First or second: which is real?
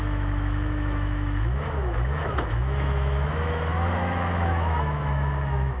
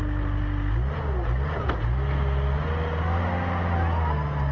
second